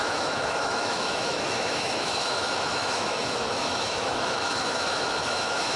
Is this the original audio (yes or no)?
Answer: no